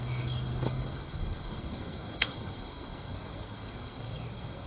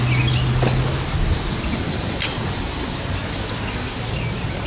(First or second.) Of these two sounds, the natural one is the second